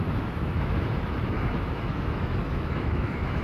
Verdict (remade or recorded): remade